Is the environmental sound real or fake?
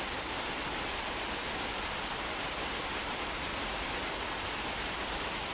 real